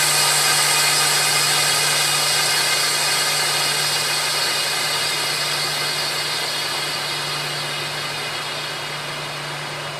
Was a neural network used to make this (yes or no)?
no